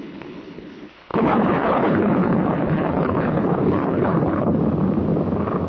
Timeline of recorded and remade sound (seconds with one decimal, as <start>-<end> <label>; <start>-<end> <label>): 0.0-4.6 remade; 4.6-5.7 recorded